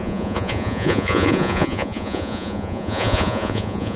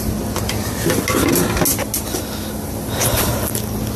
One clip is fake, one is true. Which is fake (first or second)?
first